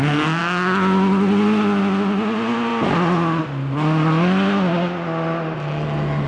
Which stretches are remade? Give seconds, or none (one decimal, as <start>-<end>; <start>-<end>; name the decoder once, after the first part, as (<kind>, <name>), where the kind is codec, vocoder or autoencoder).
none